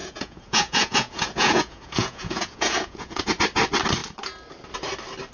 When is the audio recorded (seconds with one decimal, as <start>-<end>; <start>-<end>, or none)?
3.2-5.3